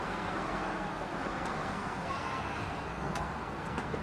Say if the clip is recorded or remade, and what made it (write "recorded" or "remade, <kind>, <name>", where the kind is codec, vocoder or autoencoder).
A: remade, codec, SNAC